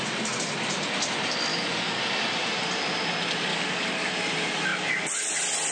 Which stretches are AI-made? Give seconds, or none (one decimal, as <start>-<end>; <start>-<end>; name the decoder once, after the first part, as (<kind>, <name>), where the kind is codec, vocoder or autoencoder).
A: 1.5-2.0 (codec, DAC); 3.5-4.1